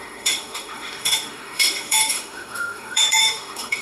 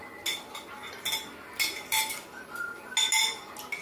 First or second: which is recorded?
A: second